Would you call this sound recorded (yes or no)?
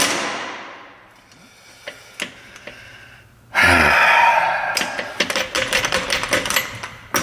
yes